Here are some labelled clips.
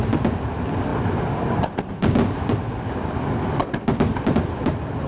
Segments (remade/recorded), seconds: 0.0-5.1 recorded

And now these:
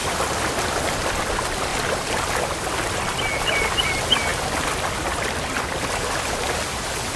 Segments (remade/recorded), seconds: 0.0-0.5 remade; 0.5-1.7 recorded; 1.7-2.3 remade; 2.3-7.2 recorded

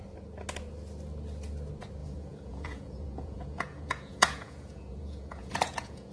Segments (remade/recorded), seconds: 0.0-2.0 recorded; 2.0-6.1 remade